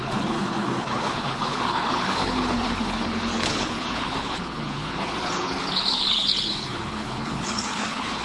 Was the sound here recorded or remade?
remade